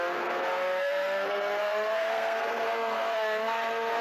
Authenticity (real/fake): fake